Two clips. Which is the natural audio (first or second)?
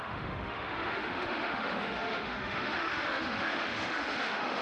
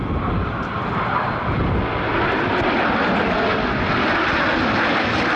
second